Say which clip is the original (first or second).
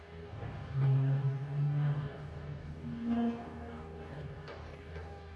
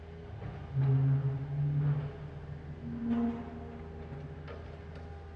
second